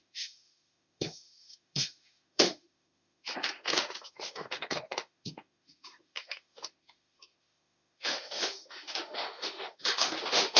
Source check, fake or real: fake